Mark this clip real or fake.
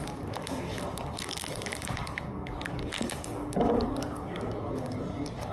fake